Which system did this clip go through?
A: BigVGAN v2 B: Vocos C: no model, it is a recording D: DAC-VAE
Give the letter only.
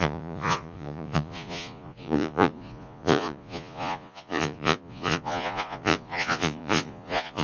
B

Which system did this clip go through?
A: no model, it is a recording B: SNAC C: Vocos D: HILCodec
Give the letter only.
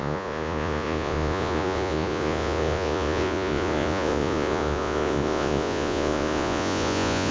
C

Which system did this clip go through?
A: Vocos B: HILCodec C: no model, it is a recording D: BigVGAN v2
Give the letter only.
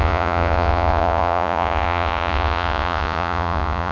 A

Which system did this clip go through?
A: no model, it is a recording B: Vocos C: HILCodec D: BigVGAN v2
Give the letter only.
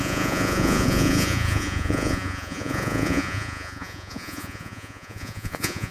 B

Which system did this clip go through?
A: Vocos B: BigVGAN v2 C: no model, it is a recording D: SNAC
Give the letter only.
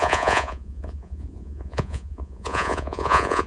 A